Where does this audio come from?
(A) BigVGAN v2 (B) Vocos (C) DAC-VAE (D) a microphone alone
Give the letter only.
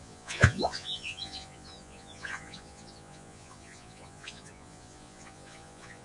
B